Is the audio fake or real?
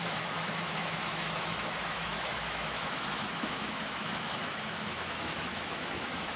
fake